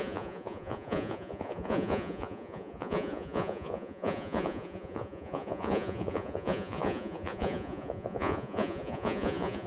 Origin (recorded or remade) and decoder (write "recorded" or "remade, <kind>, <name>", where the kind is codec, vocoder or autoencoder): remade, vocoder, Vocos